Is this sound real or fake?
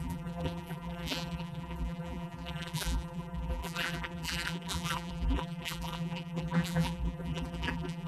fake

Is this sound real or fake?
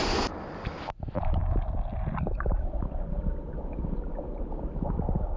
real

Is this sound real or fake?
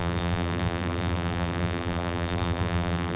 fake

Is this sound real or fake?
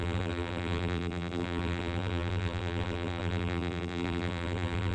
fake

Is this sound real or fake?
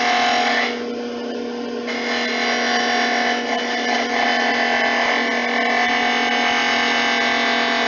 real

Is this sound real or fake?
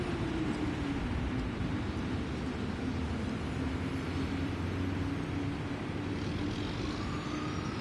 real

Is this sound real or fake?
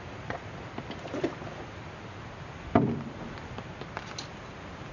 real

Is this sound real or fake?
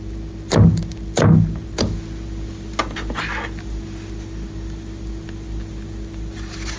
real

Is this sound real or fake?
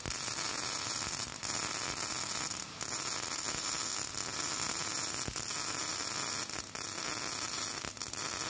real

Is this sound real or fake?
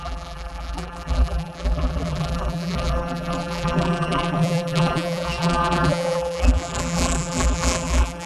fake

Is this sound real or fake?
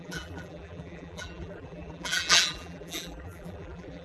fake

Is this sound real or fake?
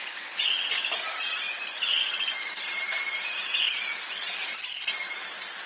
real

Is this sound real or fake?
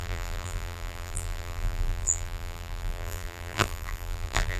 fake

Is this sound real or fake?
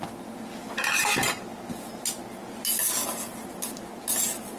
real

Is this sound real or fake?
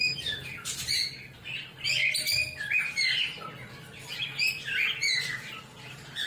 fake